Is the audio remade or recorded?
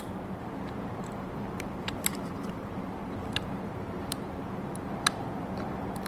remade